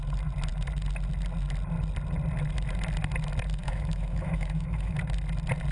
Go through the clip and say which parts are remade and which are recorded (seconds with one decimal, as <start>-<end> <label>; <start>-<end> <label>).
0.0-3.6 recorded; 3.6-5.0 remade; 5.0-5.7 recorded